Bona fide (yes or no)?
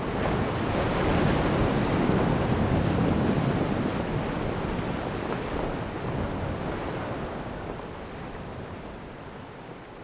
yes